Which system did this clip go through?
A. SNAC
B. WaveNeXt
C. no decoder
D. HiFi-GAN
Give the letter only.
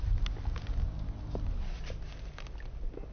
C